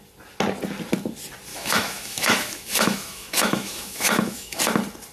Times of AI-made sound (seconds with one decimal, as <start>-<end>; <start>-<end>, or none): 1.5-4.6